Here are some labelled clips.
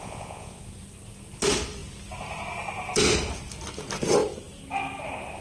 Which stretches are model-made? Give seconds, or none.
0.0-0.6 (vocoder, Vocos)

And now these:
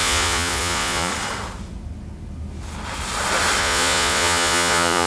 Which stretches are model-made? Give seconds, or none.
0.0-1.1 (vocoder, Vocos); 3.6-5.1

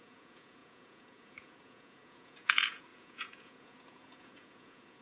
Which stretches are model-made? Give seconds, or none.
0.0-5.0 (vocoder, Vocos)

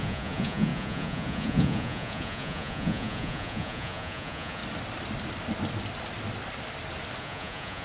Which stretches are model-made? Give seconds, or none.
0.0-4.6 (vocoder, Vocos); 7.2-7.8